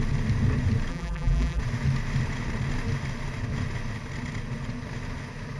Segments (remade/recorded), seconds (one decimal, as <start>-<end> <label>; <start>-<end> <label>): 0.0-0.9 recorded; 0.9-1.6 remade; 1.6-5.6 recorded

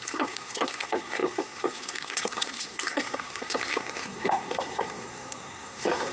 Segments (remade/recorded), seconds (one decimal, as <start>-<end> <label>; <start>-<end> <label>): 0.0-6.1 remade

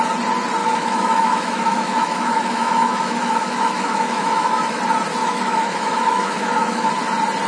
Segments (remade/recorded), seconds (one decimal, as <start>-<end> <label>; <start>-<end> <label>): 0.0-0.6 recorded; 0.6-4.8 remade; 4.8-5.2 recorded; 5.2-6.9 remade; 6.9-7.5 recorded

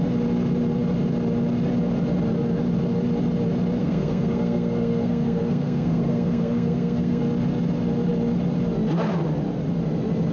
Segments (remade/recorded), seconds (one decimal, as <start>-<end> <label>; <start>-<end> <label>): 0.0-3.8 recorded; 3.8-7.2 remade; 7.2-10.3 recorded

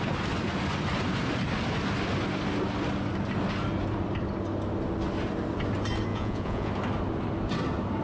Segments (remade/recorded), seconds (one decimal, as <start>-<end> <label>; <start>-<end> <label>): 0.0-6.1 recorded; 6.1-6.7 remade; 6.7-8.0 recorded